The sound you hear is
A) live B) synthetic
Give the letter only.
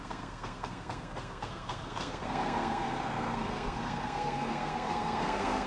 B